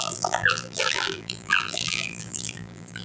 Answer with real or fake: fake